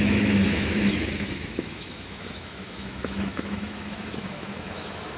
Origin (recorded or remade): remade